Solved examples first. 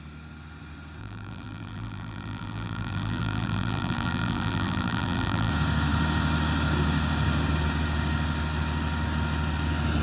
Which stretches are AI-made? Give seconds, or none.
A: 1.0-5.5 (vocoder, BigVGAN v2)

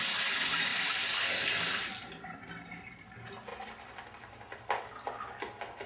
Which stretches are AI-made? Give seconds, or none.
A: none

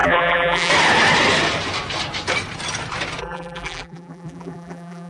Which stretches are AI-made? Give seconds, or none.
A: 0.0-0.7 (vocoder, BigVGAN v2); 3.2-5.1

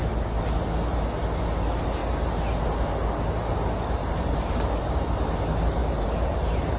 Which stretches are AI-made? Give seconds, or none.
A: 4.0-4.7 (vocoder, BigVGAN v2); 5.8-6.8

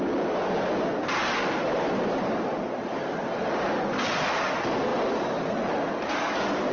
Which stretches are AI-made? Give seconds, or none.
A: 2.5-3.2 (vocoder, BigVGAN v2)